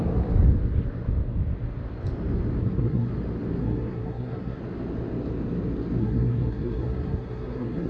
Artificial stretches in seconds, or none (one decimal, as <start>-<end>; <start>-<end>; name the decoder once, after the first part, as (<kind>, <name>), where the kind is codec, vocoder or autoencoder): 2.6-3.1 (codec, SNAC); 3.6-4.6; 6.0-7.9